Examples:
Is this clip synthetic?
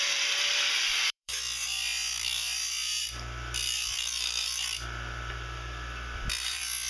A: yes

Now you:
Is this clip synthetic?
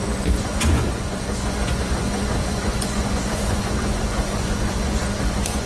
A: yes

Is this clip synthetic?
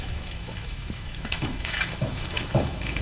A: yes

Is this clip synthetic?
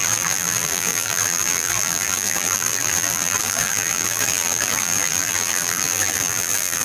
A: yes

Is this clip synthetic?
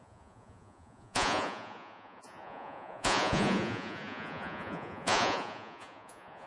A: yes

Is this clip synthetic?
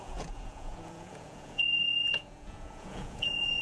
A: yes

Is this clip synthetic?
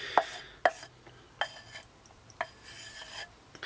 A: no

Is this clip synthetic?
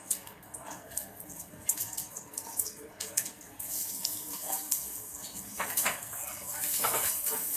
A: yes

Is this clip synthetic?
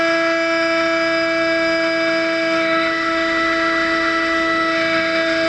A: yes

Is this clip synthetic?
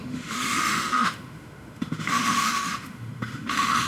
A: yes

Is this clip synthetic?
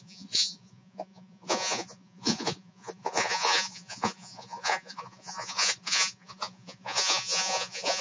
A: yes